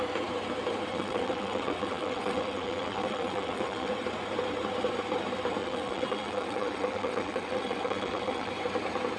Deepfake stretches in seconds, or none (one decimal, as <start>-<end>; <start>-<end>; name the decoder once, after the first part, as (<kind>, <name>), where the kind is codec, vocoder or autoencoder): 0.9-3.9 (vocoder, WaveNeXt); 5.6-8.5